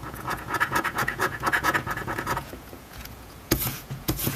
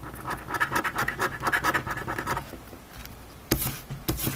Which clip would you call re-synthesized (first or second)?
first